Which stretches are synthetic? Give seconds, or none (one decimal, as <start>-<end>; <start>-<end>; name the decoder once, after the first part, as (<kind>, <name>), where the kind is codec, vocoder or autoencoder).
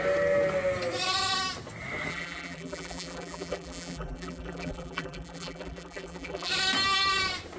2.1-6.5 (vocoder, BigVGAN v2)